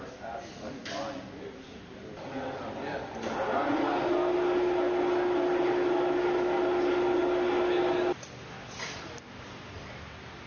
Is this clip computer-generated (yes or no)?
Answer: no